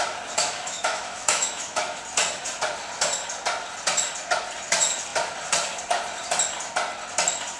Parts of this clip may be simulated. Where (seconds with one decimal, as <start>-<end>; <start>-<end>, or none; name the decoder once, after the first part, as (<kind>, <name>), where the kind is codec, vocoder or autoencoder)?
0.4-2.0 (autoencoder, DAC-VAE)